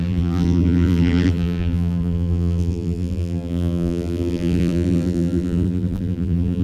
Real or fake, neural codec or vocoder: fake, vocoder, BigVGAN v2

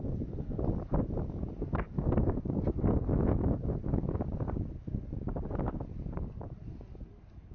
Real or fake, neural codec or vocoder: real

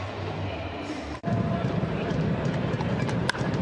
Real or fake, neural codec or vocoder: fake, vocoder, BigVGAN v2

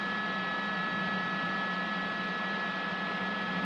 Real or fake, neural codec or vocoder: real